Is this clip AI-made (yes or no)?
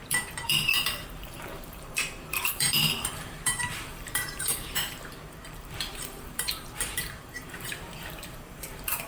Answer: yes